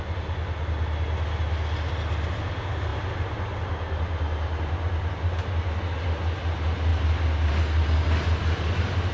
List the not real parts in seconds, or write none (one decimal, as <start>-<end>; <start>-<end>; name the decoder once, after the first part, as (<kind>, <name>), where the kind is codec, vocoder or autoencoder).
none